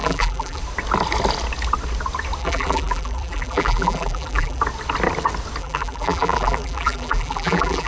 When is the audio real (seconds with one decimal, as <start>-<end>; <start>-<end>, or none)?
0.6-2.4; 4.6-5.6